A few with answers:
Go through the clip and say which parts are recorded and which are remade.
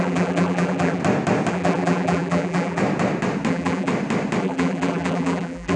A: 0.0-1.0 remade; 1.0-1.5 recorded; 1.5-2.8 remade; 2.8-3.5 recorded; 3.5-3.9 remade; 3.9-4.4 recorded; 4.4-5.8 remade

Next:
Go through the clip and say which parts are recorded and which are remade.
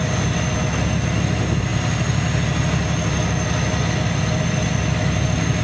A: 0.0-5.6 recorded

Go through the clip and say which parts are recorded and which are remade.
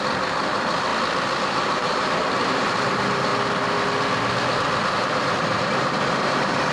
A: 0.0-0.9 remade; 0.9-1.4 recorded; 1.4-3.3 remade; 3.3-4.9 recorded; 4.9-6.7 remade